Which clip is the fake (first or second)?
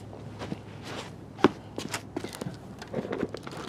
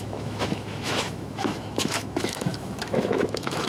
second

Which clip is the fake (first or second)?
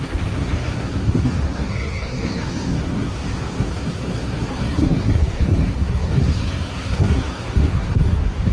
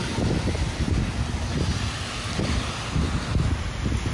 first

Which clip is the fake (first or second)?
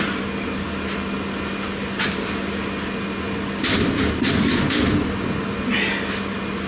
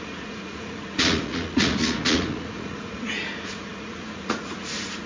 second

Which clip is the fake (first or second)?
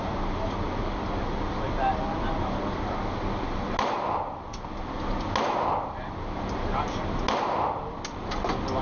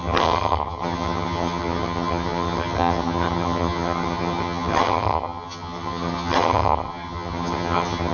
second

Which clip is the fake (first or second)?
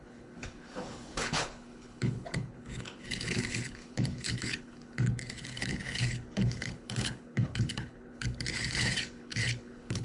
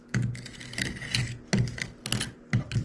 first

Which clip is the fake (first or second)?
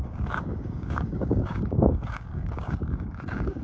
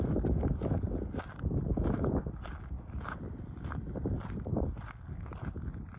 first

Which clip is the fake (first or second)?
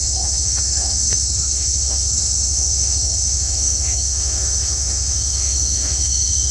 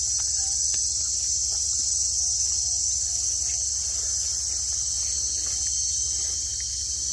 first